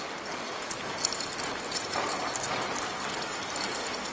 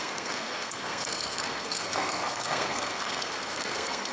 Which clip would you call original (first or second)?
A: first